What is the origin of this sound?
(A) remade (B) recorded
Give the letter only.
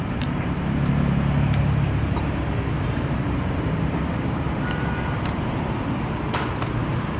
A